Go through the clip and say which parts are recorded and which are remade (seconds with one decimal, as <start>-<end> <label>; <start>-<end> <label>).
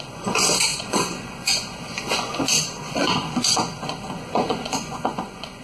0.0-5.6 remade